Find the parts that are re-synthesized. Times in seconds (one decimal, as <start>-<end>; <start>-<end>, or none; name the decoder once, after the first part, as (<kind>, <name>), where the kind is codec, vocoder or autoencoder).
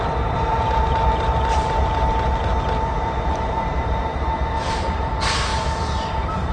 0.0-4.1 (vocoder, BigVGAN v2); 4.7-6.5